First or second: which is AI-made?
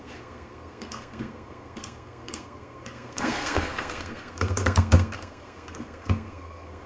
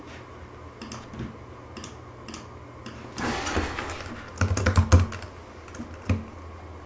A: first